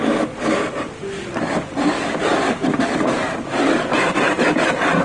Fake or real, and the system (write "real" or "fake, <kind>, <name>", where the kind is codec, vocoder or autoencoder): real